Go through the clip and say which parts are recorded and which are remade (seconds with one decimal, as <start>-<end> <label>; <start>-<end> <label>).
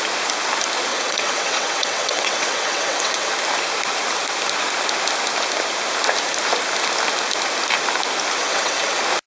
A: 0.0-0.9 recorded; 0.9-3.3 remade; 3.3-8.4 recorded; 8.4-9.0 remade; 9.0-9.4 recorded